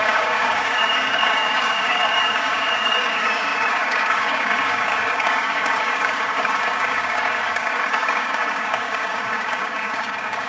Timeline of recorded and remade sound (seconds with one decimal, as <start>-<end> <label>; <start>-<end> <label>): 0.0-10.5 remade